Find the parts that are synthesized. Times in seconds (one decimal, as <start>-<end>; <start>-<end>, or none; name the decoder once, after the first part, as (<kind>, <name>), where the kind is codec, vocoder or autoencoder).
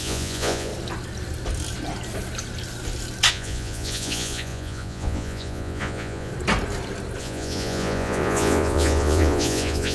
0.0-0.7 (vocoder, Vocos); 3.3-6.3; 7.2-9.9